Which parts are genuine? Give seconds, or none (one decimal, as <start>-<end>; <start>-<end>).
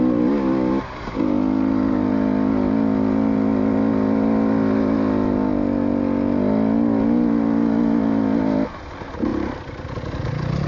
0.0-10.7